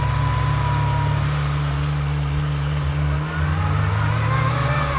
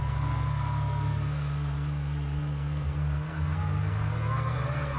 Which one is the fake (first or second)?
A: second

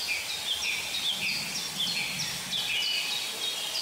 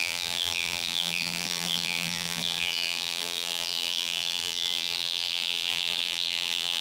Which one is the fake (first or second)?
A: second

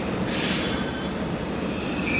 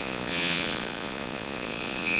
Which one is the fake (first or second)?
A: second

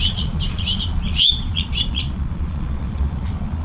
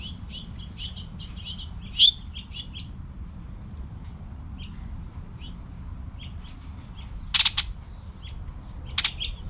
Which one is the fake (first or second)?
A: first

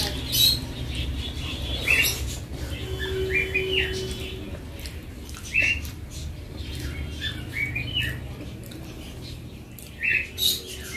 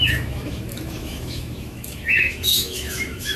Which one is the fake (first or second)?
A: second